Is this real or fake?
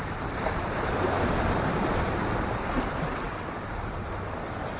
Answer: fake